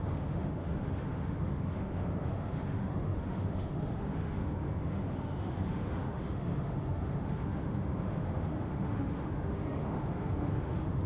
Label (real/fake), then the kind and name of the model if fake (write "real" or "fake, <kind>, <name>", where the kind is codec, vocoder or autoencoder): fake, autoencoder, DAC-VAE